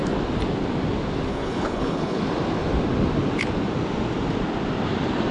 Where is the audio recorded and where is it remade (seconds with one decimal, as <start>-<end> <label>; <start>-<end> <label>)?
0.0-1.3 recorded; 1.3-2.2 remade; 2.2-5.3 recorded